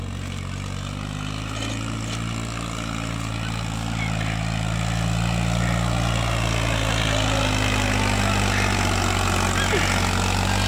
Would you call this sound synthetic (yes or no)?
no